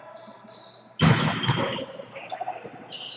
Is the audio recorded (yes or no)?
yes